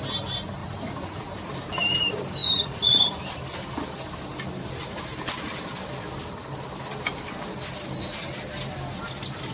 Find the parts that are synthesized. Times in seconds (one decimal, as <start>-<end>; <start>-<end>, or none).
0.6-1.3; 2.4-3.0